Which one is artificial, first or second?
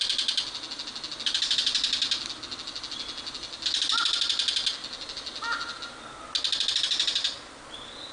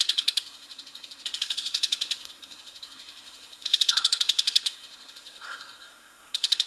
second